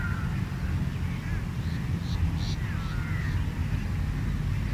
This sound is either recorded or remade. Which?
recorded